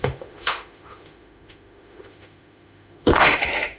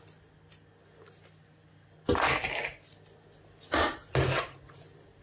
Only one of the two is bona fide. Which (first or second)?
second